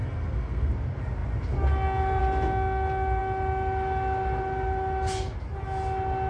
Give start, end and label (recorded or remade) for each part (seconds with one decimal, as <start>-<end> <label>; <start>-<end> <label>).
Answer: 0.0-0.7 remade; 0.7-6.3 recorded